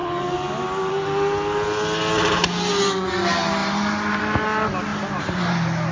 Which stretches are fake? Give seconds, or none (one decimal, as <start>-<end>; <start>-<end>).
3.6-4.2; 4.9-5.5

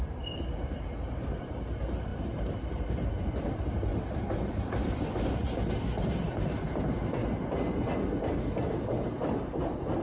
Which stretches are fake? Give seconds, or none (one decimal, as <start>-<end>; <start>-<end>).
0.0-3.9; 4.5-7.2; 8.8-10.0

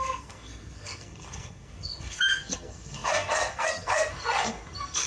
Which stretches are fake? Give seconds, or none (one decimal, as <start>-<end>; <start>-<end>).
0.0-5.1

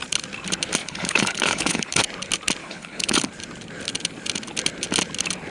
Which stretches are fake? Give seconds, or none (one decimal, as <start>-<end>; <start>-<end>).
0.8-2.0; 2.6-3.3

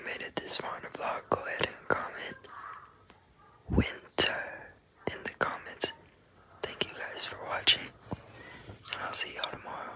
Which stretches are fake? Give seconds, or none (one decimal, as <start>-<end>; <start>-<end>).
9.2-10.0